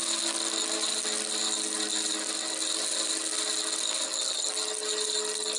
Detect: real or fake real